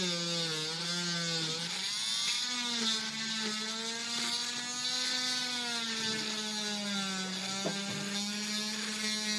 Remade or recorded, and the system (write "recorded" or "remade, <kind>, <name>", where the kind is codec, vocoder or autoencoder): recorded